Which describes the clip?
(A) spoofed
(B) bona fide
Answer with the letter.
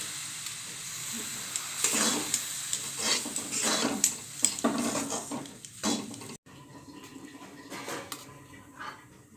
B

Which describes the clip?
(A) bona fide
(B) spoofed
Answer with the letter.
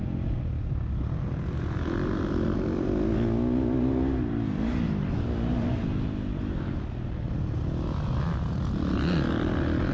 A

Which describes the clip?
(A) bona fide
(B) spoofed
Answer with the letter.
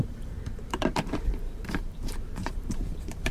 B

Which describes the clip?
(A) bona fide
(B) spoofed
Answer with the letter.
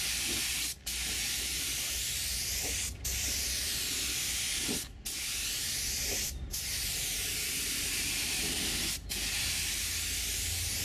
A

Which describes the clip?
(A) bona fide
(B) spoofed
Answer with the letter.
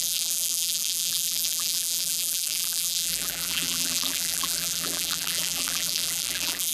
B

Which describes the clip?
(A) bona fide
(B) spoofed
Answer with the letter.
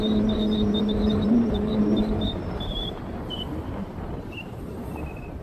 B